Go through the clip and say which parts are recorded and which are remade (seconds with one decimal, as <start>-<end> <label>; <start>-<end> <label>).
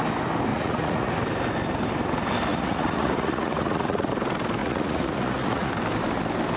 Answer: 0.0-0.5 recorded; 0.5-1.1 remade; 1.1-2.5 recorded; 2.5-4.1 remade; 4.1-4.6 recorded; 4.6-5.7 remade; 5.7-6.6 recorded